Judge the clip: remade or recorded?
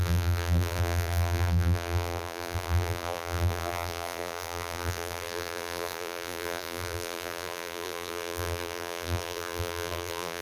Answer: remade